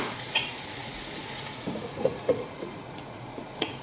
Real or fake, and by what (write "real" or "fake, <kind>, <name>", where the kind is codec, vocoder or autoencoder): fake, vocoder, Vocos